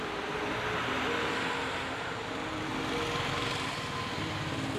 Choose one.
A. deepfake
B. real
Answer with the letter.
A